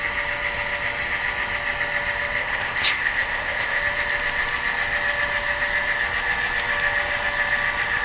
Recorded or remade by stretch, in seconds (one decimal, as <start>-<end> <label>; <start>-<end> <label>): 0.0-2.4 recorded; 2.4-3.8 remade; 3.8-8.0 recorded